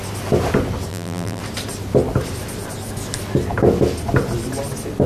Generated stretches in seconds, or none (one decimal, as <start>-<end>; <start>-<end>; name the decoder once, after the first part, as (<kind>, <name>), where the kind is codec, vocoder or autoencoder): 0.9-1.4 (vocoder, BigVGAN v2)